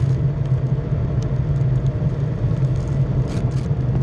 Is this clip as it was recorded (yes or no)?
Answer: yes